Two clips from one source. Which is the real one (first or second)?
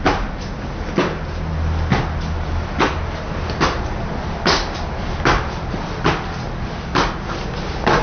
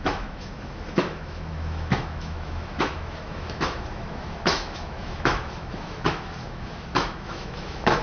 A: first